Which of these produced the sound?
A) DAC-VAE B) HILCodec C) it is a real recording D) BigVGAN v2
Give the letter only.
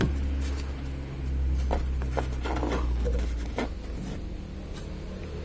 C